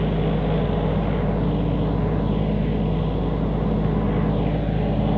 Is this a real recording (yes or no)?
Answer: yes